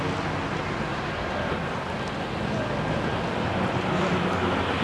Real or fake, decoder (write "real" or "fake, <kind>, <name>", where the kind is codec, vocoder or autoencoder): real